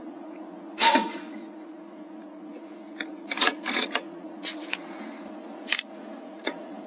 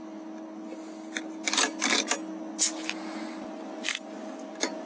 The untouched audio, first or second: second